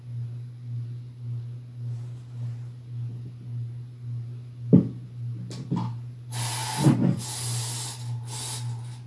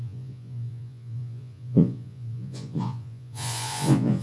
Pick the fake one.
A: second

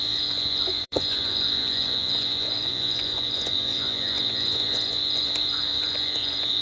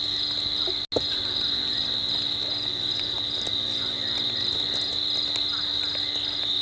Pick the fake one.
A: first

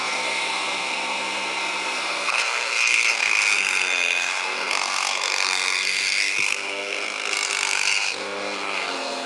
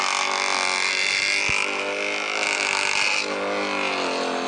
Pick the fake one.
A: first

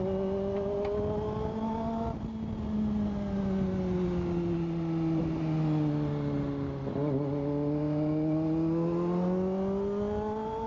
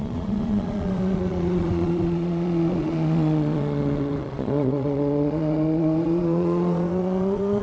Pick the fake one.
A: second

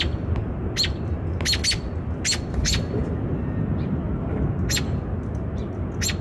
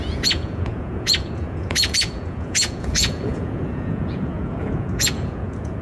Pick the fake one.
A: second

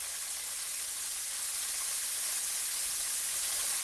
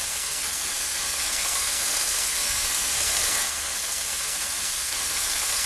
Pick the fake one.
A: second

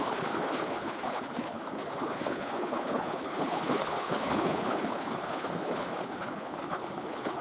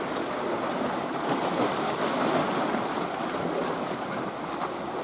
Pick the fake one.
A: first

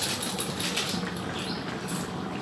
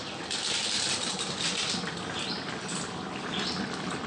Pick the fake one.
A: second